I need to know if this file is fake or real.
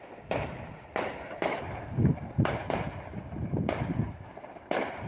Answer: real